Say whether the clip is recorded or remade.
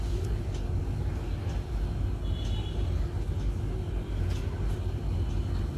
recorded